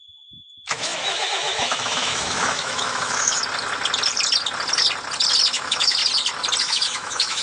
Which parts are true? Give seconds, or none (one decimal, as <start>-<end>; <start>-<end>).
3.4-5.5; 6.0-6.6